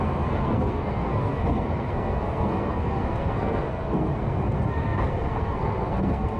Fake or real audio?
fake